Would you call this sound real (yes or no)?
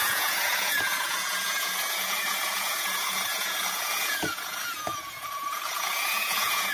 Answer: no